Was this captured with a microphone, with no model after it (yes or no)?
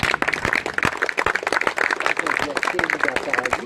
yes